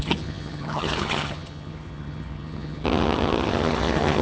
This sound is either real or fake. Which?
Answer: fake